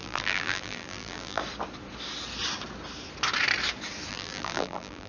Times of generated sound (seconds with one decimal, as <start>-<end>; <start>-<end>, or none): 0.0-1.4; 4.1-5.1